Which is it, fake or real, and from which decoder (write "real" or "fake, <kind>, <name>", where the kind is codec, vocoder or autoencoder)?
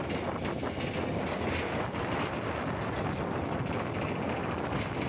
real